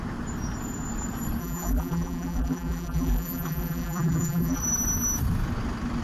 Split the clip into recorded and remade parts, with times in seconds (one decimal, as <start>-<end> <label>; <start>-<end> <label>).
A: 0.0-1.4 recorded; 1.4-4.6 remade; 4.6-6.0 recorded